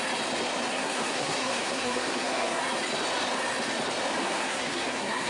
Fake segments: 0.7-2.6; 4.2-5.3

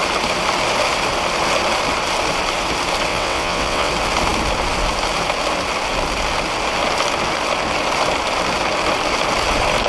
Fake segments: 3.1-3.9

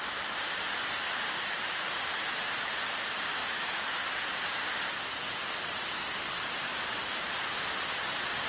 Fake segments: 3.4-4.0

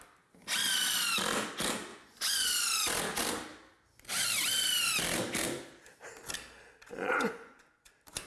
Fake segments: 1.9-2.5; 6.9-7.9

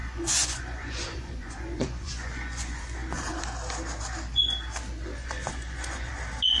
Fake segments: 0.0-3.4; 5.2-6.1

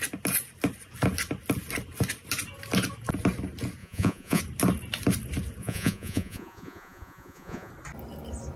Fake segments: 3.8-4.4; 5.6-7.7

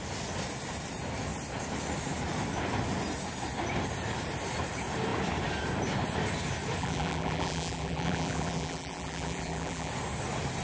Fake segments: 6.8-9.9

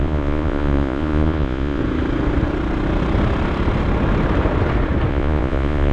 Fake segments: 0.0-1.8; 5.1-5.9